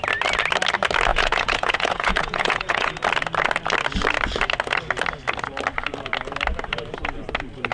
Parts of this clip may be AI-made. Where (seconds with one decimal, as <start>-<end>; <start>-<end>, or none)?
1.1-2.9